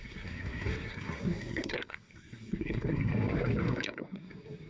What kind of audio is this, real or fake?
fake